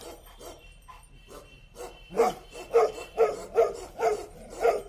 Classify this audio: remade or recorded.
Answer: remade